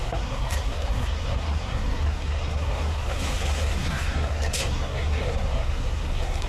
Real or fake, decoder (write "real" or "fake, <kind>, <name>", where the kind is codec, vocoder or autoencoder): fake, codec, SNAC